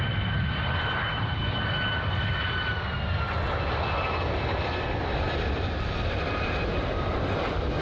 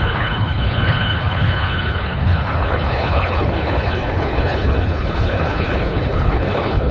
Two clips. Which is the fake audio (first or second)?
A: second